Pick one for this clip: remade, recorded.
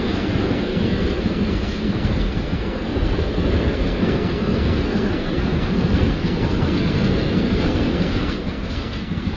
remade